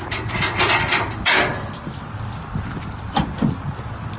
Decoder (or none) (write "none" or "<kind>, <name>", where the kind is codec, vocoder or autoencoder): none